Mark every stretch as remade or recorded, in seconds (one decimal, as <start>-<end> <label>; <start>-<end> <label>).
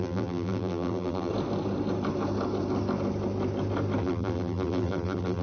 0.0-1.3 remade; 1.3-4.0 recorded; 4.0-5.4 remade